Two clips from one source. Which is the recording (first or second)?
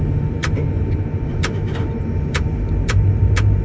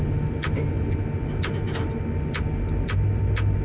second